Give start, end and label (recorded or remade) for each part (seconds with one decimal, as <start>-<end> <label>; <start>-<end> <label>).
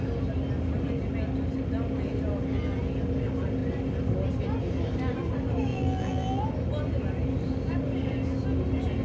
0.0-5.7 recorded; 5.7-6.4 remade; 6.4-9.0 recorded